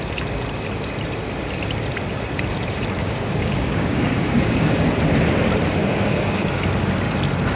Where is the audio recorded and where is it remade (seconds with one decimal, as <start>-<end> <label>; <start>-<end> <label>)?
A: 0.0-3.0 recorded; 3.0-4.9 remade; 4.9-5.8 recorded; 5.8-6.6 remade; 6.6-7.6 recorded